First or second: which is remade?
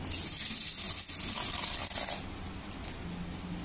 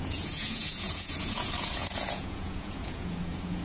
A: second